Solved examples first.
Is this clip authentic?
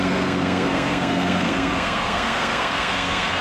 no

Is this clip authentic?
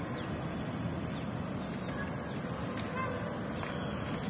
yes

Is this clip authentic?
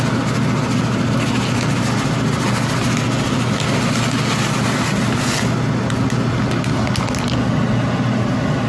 yes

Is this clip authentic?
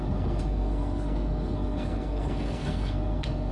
no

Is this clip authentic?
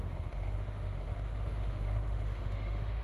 no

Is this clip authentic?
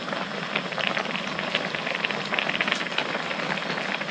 yes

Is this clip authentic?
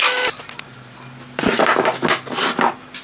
yes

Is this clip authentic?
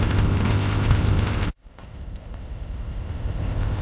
no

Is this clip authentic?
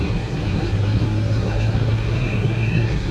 no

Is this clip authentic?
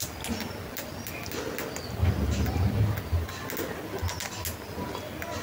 yes